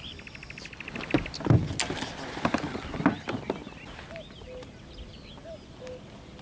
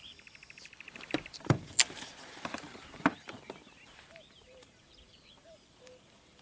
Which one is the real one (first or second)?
first